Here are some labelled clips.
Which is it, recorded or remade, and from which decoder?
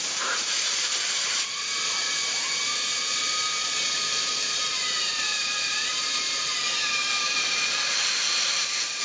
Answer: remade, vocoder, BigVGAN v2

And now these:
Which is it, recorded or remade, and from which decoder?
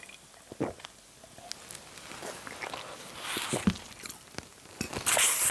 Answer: recorded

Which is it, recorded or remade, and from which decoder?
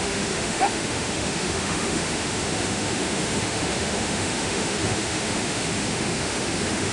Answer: remade, autoencoder, DAC-VAE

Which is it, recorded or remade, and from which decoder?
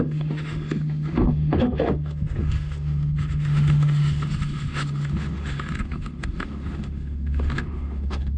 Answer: remade, autoencoder, DAC-VAE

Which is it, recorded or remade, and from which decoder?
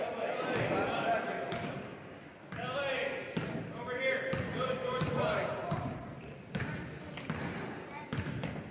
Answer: recorded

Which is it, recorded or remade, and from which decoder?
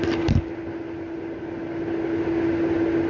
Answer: recorded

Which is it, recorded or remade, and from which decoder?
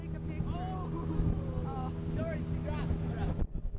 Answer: recorded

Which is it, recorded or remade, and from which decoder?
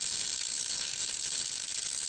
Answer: recorded